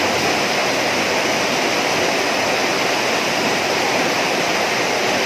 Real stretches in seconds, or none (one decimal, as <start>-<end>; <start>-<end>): 0.0-0.6; 1.8-2.6